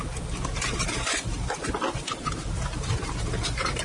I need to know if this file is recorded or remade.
remade